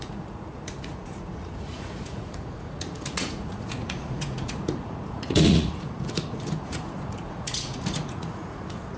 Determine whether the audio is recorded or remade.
remade